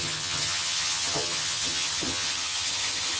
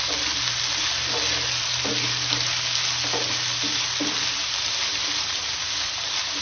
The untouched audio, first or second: second